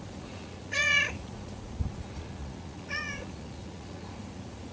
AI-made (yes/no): yes